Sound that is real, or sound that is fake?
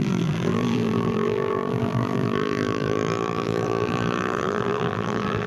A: fake